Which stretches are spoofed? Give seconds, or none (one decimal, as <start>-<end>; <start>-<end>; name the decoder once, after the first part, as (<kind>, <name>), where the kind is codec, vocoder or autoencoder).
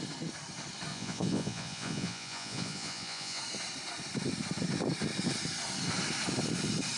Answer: 0.9-3.4 (vocoder, Vocos)